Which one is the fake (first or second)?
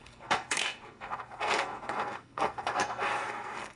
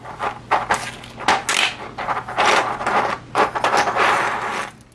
first